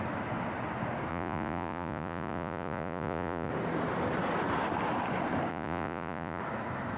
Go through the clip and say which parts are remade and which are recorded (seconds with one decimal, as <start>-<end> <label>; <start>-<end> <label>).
0.0-1.1 recorded; 1.1-3.5 remade; 3.5-5.5 recorded; 5.5-6.4 remade; 6.4-7.0 recorded